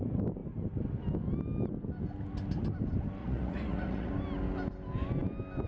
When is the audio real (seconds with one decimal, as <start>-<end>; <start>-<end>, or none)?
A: 0.0-3.2; 4.1-5.7